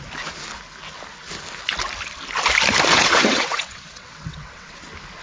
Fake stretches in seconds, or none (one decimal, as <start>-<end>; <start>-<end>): 2.9-4.7